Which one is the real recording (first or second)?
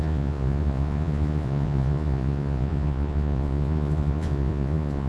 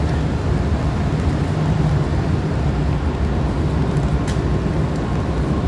second